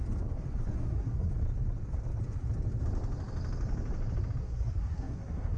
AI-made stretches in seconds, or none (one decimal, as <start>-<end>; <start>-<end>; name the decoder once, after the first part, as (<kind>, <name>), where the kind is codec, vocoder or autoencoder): 0.7-1.3 (codec, SNAC); 4.4-5.6